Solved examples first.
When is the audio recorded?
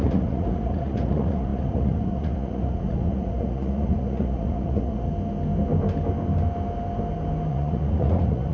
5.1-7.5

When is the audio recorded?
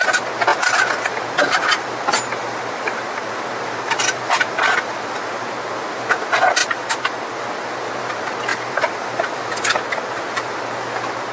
0.0-0.5; 5.3-6.6; 7.4-8.5; 9.6-11.3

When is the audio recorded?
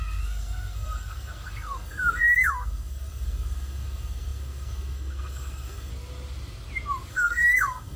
5.9-7.1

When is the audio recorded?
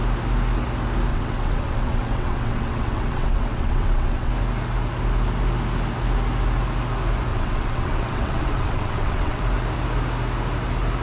0.0-1.1; 4.3-7.3; 9.4-11.0